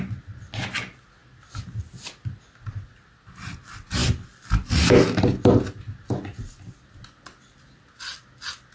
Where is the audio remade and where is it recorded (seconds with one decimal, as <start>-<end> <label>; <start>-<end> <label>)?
0.0-8.7 recorded